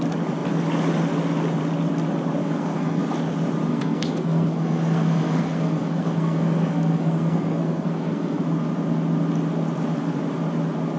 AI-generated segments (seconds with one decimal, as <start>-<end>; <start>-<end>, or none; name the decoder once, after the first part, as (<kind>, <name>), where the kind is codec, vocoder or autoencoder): 2.4-3.0 (codec, SNAC); 3.7-8.4